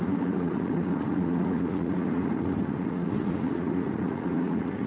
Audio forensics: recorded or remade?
remade